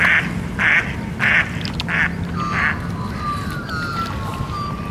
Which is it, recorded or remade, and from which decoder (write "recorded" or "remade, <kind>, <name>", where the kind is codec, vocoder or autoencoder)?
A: recorded